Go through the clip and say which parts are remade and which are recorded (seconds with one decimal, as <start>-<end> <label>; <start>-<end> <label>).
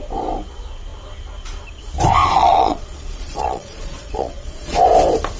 0.0-2.2 recorded; 2.2-4.8 remade; 4.8-5.4 recorded